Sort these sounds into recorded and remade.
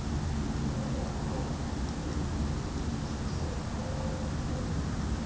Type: recorded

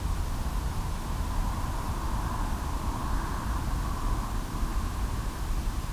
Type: remade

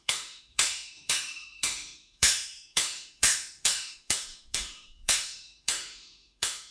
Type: remade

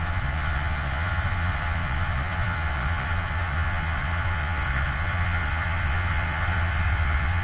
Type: remade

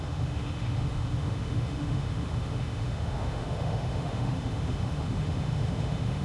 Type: remade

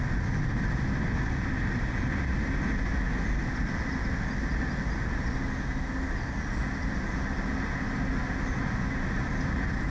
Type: recorded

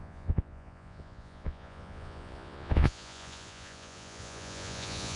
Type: remade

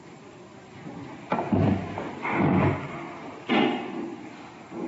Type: recorded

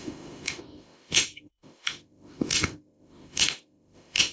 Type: remade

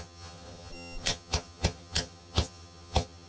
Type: remade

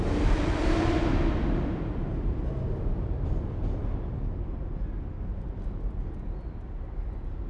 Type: recorded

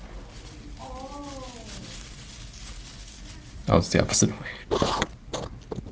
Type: recorded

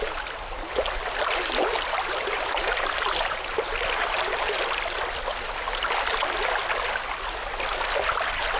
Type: recorded